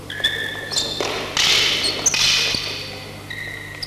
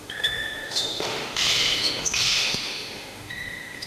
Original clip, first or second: first